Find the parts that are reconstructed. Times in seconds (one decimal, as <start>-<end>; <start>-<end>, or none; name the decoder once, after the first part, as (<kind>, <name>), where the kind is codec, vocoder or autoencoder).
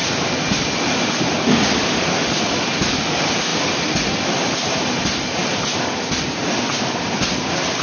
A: none